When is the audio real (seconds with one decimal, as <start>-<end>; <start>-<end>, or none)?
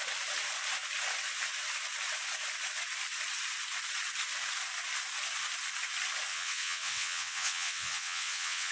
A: 0.0-6.3